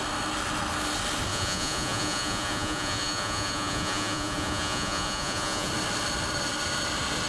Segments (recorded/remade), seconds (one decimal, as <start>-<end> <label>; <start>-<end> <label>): 0.0-1.3 recorded; 1.3-5.7 remade; 5.7-7.3 recorded